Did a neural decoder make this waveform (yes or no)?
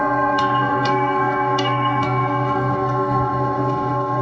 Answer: yes